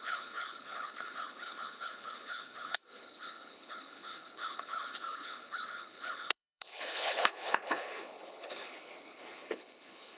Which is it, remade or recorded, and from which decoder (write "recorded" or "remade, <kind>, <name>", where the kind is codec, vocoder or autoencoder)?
remade, codec, HILCodec